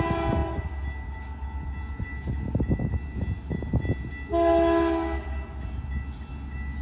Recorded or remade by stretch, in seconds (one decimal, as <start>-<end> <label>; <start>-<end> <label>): 0.0-6.8 recorded